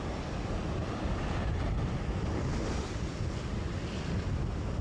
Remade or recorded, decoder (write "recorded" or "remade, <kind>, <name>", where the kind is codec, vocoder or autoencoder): recorded